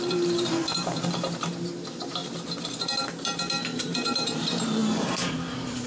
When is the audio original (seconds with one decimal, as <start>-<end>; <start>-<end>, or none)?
2.2-3.6